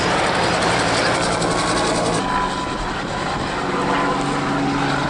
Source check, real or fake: real